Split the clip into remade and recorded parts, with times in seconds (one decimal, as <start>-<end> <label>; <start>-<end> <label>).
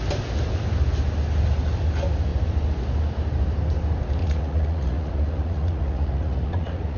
0.0-4.2 recorded; 4.2-7.0 remade